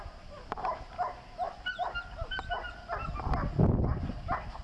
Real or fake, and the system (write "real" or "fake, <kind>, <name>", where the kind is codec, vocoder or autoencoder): real